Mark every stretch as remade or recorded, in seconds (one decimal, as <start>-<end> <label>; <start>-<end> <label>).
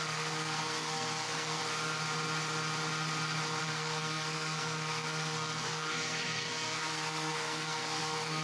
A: 0.0-1.6 remade; 1.6-3.6 recorded; 3.6-8.4 remade